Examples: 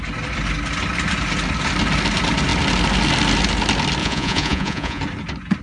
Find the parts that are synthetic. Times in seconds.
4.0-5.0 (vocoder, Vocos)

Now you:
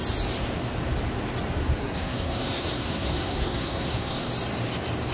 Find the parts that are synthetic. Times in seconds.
1.8-4.3 (codec, SNAC)

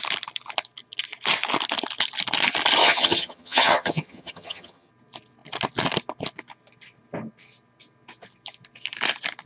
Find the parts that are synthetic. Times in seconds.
2.8-4.9 (vocoder, HiFi-GAN)